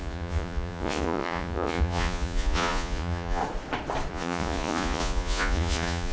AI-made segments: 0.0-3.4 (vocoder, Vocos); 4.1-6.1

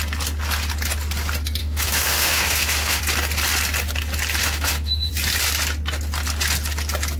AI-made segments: 1.6-3.0 (autoencoder, DAC-VAE); 4.4-5.1